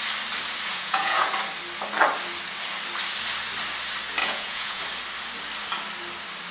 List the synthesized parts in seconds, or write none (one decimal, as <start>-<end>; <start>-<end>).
0.7-1.3; 4.2-4.8